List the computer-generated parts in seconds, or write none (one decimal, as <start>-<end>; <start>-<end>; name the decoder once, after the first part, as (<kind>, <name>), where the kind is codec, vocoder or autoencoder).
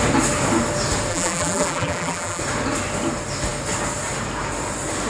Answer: 1.1-2.4 (vocoder, BigVGAN v2)